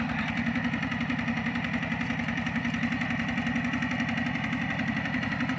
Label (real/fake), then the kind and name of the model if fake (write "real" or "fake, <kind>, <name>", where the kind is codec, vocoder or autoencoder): fake, vocoder, BigVGAN v2